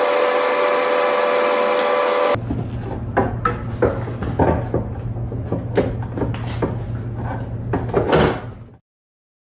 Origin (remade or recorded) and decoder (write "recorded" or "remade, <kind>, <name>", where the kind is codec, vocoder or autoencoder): recorded